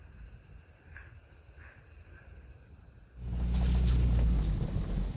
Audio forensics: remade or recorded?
recorded